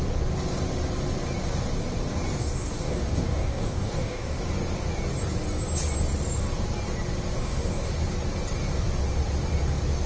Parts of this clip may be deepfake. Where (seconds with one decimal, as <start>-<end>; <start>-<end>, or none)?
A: 2.4-4.4; 7.4-7.9